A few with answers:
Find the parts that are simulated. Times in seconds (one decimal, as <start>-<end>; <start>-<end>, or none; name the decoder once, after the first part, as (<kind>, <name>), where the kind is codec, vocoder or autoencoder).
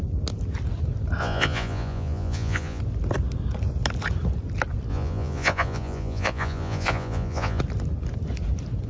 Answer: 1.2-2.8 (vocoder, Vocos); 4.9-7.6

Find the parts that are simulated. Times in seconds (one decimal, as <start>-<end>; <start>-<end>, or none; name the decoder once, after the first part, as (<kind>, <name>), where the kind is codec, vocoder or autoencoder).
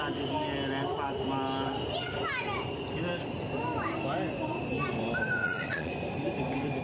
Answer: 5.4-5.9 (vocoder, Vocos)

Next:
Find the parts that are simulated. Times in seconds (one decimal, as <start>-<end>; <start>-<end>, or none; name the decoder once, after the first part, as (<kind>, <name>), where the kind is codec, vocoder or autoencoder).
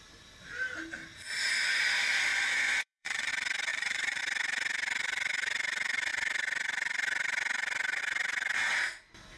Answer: 2.3-3.3 (vocoder, Vocos); 3.7-4.2